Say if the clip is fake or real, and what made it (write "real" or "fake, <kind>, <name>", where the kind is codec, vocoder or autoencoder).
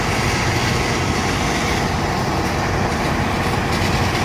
real